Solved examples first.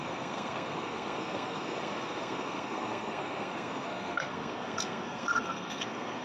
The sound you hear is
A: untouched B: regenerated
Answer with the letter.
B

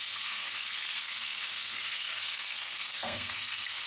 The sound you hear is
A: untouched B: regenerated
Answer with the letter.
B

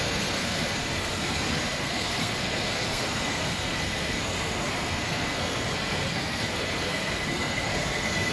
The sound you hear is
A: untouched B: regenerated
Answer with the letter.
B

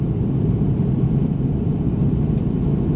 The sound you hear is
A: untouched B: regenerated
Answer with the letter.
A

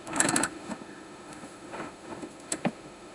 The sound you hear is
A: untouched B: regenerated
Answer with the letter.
B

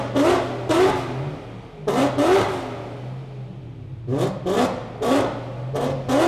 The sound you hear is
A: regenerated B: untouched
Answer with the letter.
B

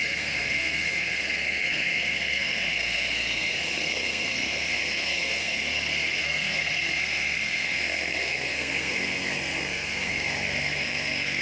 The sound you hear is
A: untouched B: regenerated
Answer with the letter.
B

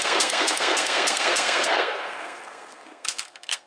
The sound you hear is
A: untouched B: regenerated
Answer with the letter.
B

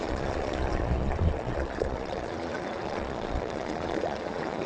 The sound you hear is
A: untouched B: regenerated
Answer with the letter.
B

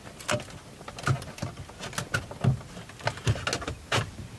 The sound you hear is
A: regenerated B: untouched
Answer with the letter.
B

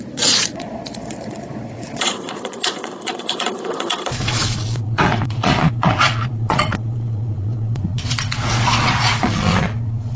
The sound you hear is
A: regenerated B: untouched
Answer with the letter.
A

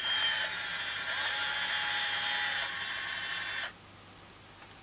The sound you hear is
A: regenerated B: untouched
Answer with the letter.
B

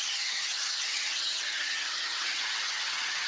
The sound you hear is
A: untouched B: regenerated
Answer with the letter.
B